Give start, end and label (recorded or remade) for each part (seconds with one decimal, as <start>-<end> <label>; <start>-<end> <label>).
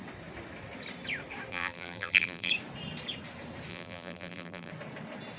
0.0-1.5 recorded; 1.5-2.5 remade; 2.5-3.7 recorded; 3.7-4.7 remade; 4.7-5.4 recorded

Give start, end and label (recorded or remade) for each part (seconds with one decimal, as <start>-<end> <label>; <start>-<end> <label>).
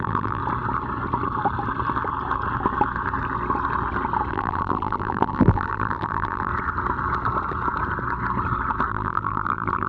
0.0-0.4 remade; 0.4-4.3 recorded; 4.3-6.5 remade; 6.5-8.9 recorded; 8.9-9.9 remade